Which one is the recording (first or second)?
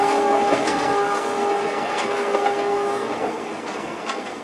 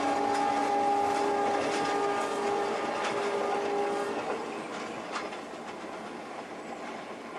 second